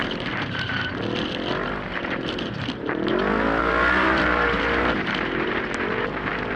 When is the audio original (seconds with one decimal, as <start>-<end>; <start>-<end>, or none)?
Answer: 0.9-1.9; 3.1-3.6